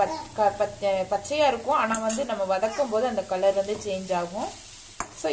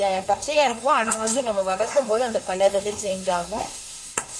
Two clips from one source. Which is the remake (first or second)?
second